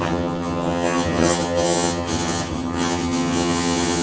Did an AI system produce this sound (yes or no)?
yes